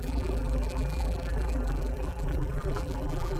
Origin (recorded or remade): remade